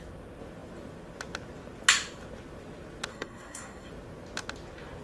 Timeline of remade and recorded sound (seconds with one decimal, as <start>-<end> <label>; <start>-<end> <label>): 0.0-3.1 recorded; 3.1-3.9 remade; 3.9-5.0 recorded